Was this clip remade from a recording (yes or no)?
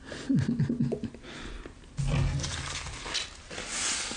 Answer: no